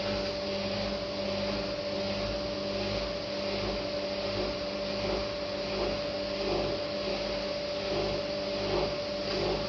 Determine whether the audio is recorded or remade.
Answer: recorded